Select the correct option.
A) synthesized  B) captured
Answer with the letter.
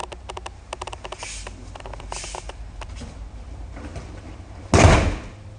B